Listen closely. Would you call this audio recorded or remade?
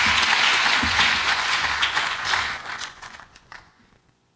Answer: remade